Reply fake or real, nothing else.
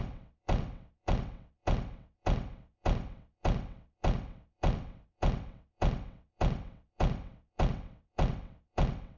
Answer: fake